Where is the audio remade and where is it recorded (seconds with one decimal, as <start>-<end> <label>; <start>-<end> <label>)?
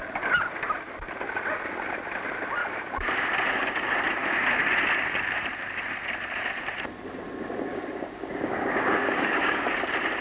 0.0-2.6 recorded; 2.6-3.1 remade; 3.1-7.7 recorded; 7.7-9.7 remade; 9.7-10.2 recorded